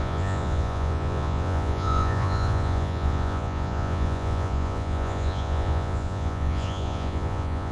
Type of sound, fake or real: fake